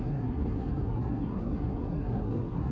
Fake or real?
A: fake